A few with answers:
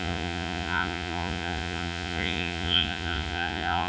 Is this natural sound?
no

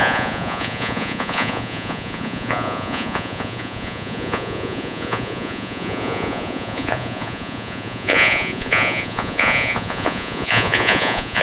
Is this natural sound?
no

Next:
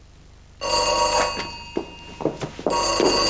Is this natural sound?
yes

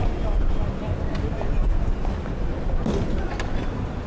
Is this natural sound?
yes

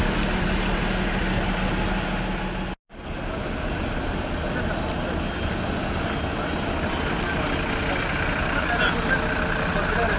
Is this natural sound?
yes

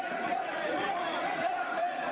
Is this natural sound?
no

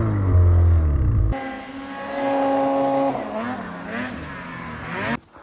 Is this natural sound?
yes